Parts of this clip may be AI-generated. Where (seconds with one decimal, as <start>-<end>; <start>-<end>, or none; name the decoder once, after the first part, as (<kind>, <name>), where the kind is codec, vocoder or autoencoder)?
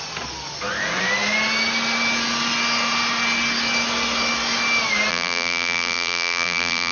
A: 5.1-6.9 (vocoder, BigVGAN v2)